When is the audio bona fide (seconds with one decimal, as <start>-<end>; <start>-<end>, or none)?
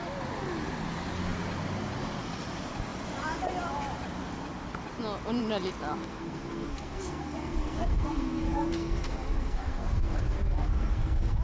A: 0.0-6.0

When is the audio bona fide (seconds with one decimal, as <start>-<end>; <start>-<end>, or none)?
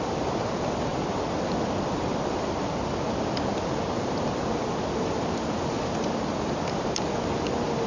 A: 0.0-7.9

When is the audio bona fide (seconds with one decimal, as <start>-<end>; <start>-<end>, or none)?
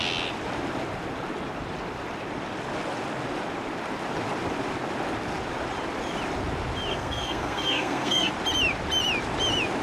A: 0.0-6.9; 8.3-9.8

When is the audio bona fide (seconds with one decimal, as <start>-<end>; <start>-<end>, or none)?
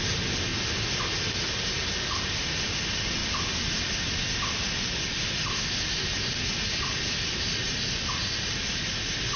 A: 0.0-9.4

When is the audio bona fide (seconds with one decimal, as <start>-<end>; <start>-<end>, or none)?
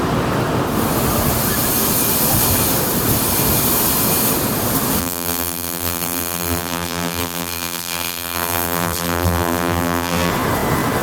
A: 0.0-5.0; 10.3-11.0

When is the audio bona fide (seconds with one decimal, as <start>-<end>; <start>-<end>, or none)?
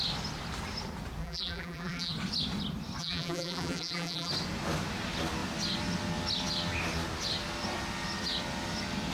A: 0.0-1.2; 2.1-3.0; 4.3-9.1